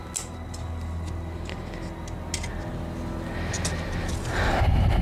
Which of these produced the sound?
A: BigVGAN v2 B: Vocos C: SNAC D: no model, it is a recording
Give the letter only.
D